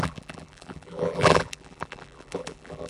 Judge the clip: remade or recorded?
remade